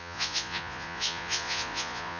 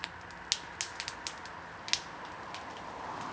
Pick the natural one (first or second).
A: second